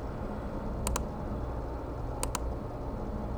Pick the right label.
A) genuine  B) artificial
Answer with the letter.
A